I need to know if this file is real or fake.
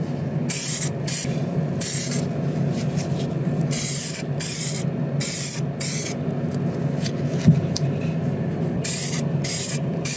real